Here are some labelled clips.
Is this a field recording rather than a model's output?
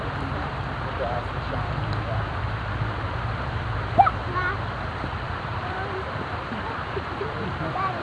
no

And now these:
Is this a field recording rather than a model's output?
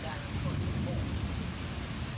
yes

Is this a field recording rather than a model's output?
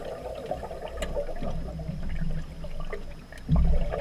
yes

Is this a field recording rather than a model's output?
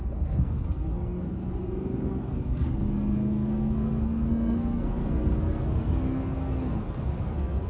no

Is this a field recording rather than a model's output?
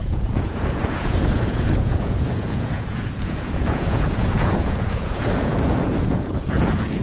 no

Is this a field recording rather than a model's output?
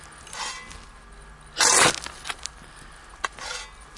yes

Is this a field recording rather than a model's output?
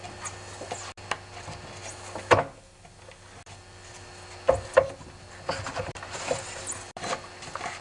yes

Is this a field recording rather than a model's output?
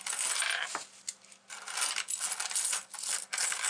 yes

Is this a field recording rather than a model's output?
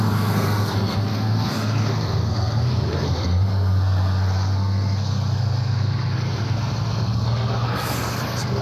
no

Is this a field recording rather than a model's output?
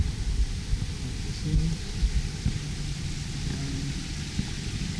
yes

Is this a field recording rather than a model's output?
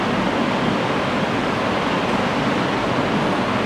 yes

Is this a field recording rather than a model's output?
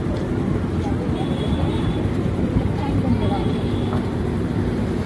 no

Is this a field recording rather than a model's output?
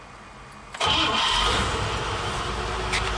yes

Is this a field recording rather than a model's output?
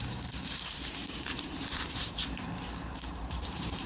no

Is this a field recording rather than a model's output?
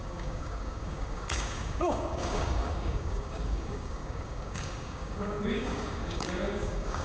no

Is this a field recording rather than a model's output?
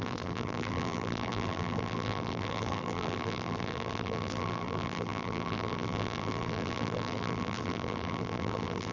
no